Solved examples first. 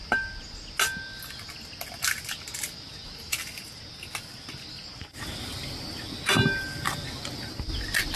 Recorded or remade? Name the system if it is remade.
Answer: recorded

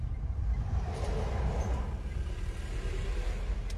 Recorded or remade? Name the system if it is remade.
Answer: recorded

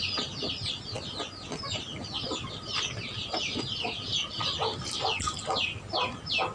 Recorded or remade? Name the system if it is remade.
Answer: recorded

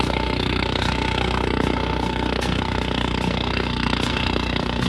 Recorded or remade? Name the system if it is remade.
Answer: remade, codec, SNAC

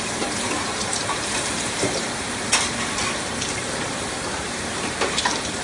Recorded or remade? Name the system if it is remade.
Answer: remade, vocoder, BigVGAN v2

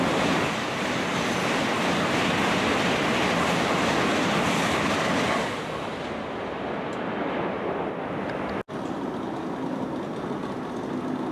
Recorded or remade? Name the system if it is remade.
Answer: recorded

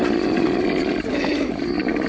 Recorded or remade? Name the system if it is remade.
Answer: recorded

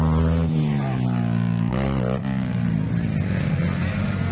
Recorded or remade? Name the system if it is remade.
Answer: recorded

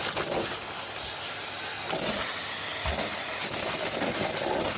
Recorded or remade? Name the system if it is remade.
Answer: recorded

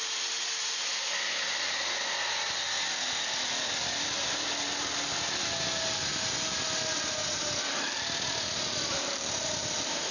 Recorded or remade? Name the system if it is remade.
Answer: recorded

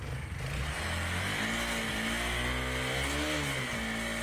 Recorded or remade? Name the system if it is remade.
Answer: recorded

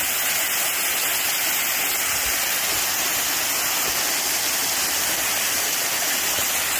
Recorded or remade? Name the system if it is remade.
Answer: recorded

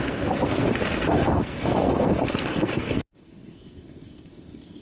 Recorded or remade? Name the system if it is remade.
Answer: remade, codec, SNAC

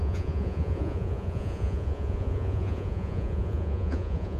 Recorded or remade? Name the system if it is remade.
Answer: remade, vocoder, Vocos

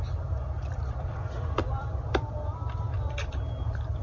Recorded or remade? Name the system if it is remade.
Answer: remade, vocoder, BigVGAN v2